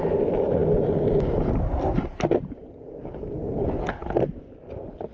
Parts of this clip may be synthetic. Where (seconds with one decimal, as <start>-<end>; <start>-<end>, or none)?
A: none